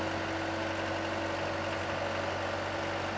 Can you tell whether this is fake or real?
real